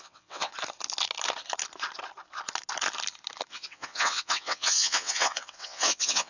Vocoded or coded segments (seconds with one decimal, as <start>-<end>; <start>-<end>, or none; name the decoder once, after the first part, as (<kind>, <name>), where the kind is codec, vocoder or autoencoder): 0.0-0.5 (vocoder, WaveNeXt); 3.5-6.3